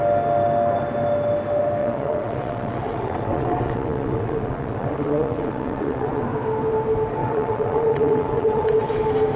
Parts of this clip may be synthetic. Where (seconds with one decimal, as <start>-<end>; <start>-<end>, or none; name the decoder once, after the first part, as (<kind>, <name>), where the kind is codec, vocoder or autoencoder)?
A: 1.8-6.2 (vocoder, WaveNeXt); 7.2-9.0